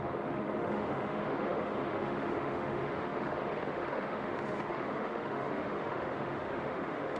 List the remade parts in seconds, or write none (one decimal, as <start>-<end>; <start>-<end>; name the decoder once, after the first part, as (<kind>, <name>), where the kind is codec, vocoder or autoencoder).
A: 0.0-7.2 (autoencoder, DAC-VAE)

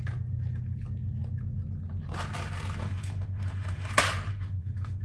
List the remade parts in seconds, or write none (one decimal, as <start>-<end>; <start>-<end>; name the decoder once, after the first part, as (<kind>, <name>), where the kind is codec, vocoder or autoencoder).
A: 2.8-3.9 (autoencoder, DAC-VAE); 4.3-5.0